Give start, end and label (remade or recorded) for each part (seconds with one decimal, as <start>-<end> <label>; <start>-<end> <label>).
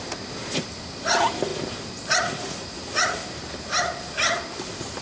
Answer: 0.0-5.0 remade